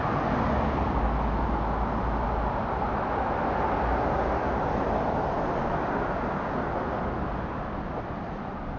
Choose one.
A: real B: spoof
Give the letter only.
A